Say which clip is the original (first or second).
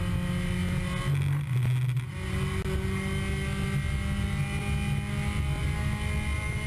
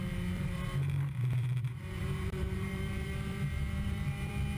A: first